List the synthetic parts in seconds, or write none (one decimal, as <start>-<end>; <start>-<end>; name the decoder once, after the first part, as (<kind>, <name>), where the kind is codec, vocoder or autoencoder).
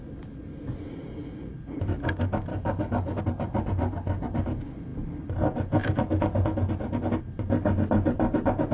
2.5-3.2 (codec, DAC)